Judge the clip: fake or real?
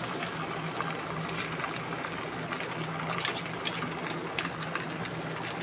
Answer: real